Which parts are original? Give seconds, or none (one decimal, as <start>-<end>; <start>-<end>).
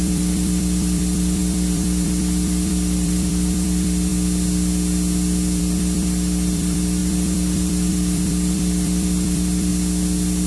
4.1-5.6; 9.7-10.5